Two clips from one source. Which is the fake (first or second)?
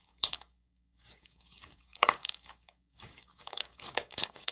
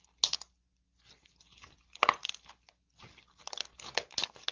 first